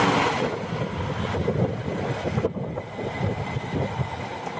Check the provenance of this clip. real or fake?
real